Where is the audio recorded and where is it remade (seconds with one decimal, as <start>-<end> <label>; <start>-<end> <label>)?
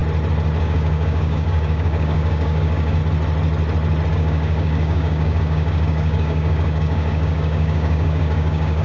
0.0-0.6 recorded; 0.6-3.0 remade; 3.0-4.1 recorded; 4.1-8.8 remade